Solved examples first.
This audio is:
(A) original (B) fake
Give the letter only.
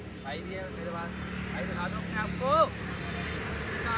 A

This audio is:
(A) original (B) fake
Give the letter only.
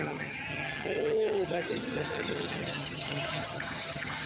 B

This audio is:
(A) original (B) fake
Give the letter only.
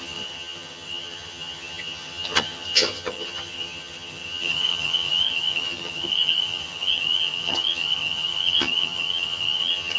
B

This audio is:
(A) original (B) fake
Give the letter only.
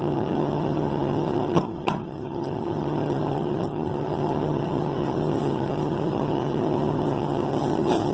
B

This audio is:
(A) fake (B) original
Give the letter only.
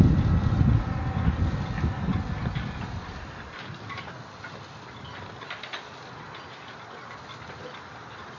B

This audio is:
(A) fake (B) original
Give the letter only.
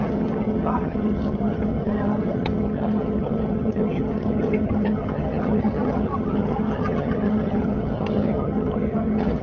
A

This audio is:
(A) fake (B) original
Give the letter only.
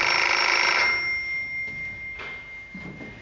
B